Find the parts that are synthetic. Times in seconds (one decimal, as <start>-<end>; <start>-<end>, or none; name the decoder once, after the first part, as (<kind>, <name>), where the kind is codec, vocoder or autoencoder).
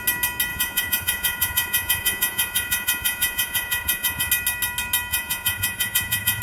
0.5-4.3 (vocoder, Vocos); 5.1-6.4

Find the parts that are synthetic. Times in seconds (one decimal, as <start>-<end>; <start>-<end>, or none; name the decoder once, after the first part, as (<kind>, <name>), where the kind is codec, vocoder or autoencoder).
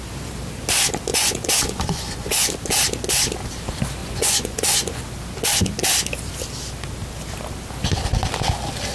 1.1-2.5 (vocoder, Vocos); 4.0-5.0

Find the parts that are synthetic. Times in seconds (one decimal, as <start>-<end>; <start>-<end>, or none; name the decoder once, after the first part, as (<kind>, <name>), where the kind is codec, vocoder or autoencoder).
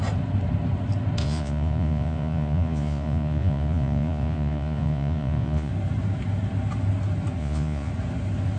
1.2-5.7 (vocoder, Vocos); 7.4-7.9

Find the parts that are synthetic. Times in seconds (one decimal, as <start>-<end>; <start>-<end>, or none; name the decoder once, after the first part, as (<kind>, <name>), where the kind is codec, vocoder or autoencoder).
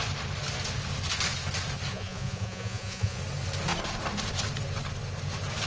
1.9-3.2 (vocoder, Vocos)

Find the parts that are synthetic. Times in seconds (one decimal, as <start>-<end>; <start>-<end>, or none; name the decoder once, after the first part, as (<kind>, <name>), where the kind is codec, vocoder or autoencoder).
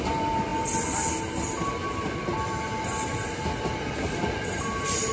none